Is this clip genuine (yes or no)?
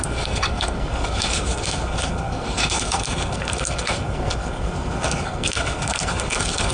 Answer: no